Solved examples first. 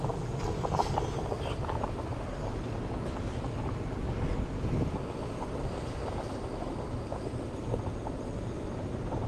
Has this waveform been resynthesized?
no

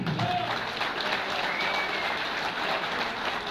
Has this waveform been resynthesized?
no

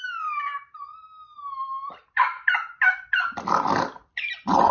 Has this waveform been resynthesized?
no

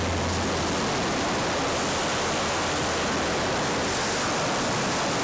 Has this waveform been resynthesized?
no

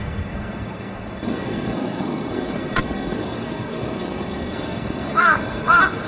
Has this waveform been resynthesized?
yes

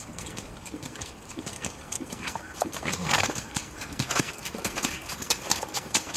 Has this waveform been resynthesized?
yes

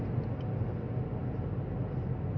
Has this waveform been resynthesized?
no